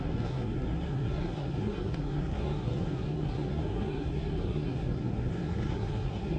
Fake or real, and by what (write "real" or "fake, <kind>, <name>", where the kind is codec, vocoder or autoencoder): fake, codec, SNAC